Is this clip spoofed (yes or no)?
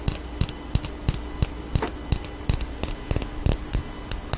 no